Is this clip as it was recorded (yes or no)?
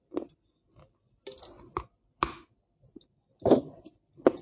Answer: yes